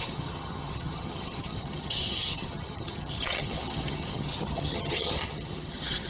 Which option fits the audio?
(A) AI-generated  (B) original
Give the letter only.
A